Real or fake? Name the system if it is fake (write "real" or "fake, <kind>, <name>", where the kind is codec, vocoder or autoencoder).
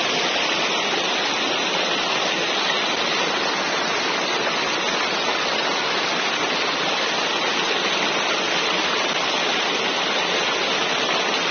real